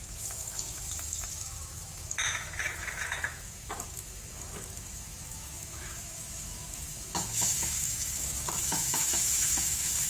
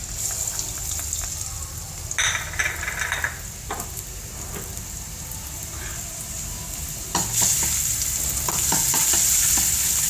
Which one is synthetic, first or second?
first